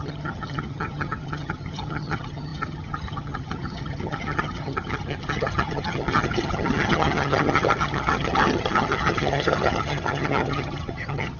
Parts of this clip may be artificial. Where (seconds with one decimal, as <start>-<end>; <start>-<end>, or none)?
0.0-11.4